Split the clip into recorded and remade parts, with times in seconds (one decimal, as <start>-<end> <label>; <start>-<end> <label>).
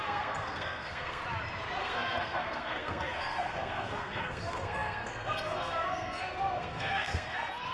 0.0-1.2 remade; 1.2-1.8 recorded; 1.8-7.7 remade